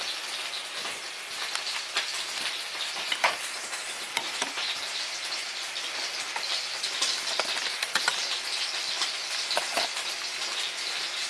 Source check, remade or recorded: recorded